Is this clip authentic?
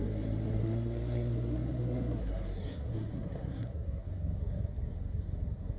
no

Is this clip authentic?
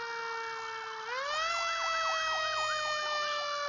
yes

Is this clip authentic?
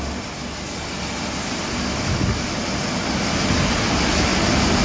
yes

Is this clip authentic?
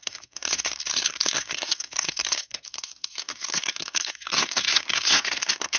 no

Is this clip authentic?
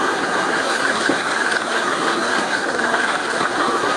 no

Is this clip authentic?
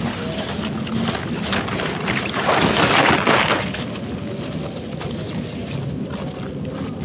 yes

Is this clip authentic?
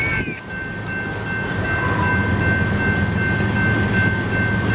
yes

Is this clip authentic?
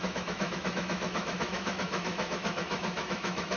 no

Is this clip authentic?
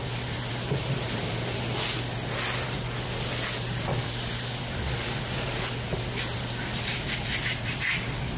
yes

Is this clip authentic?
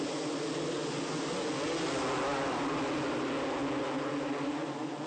yes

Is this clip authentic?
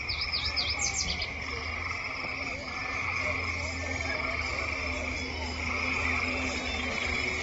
yes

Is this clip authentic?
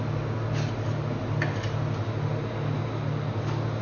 yes